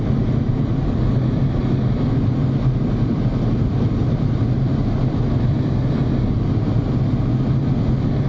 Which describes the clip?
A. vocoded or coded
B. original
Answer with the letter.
B